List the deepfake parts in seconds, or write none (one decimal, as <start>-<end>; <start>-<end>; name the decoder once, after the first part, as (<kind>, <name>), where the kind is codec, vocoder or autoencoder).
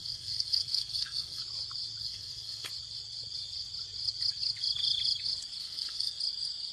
0.0-1.4 (codec, SNAC); 2.0-2.7; 5.6-6.2